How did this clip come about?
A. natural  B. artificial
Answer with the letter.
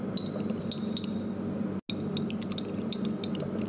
A